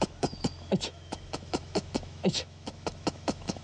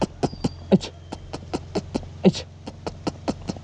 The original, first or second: second